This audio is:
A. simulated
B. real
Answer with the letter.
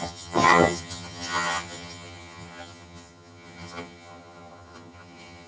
A